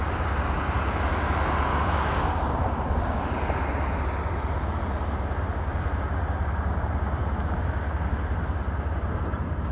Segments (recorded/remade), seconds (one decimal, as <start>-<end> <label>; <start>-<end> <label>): 0.0-1.7 recorded; 1.7-3.2 remade; 3.2-9.7 recorded